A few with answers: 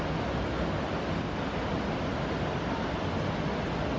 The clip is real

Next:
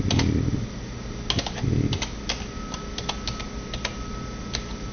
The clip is real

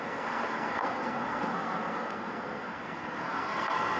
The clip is fake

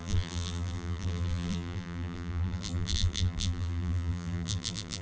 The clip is fake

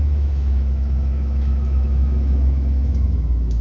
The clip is fake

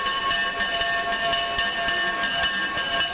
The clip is real